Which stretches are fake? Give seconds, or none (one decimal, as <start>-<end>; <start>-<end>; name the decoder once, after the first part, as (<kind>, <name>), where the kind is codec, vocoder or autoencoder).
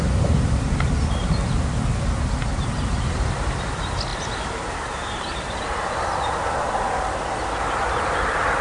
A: none